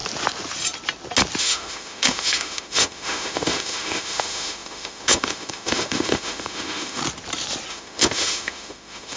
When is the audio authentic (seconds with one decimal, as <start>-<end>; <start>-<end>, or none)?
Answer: 0.0-1.4; 7.0-7.7